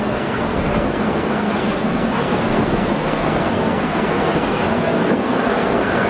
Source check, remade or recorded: remade